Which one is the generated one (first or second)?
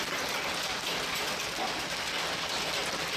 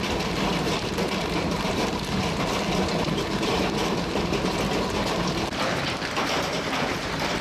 second